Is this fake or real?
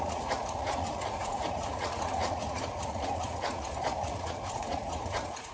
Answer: fake